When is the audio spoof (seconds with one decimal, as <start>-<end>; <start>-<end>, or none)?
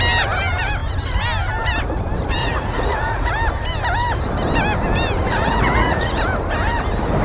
2.4-3.3; 5.3-6.2